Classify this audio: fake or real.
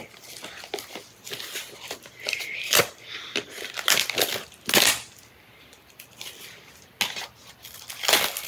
real